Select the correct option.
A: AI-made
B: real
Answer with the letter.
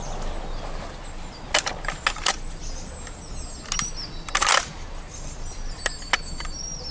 B